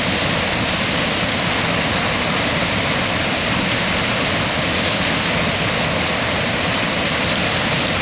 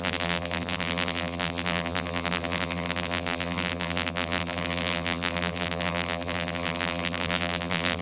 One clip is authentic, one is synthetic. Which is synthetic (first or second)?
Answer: second